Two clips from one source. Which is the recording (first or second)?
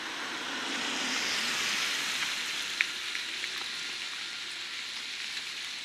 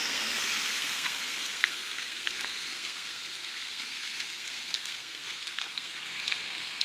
first